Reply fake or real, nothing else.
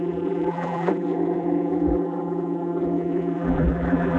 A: fake